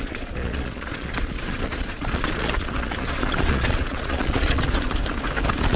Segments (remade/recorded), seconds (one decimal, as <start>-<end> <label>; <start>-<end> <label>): 0.0-5.0 remade; 5.0-5.8 recorded